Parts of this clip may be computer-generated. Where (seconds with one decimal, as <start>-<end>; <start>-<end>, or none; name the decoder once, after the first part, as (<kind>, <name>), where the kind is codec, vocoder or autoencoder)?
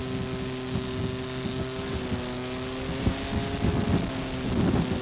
none